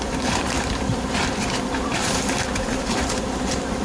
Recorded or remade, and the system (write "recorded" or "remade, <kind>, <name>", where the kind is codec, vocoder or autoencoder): remade, vocoder, BigVGAN v2